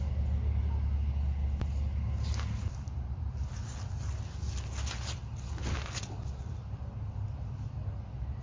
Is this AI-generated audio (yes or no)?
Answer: no